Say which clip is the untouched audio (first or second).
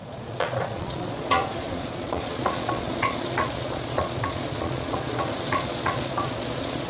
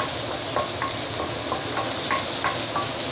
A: second